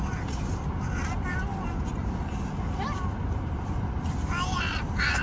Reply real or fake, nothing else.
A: real